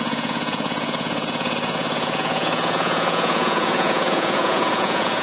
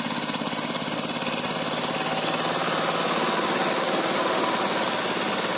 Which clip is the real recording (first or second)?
second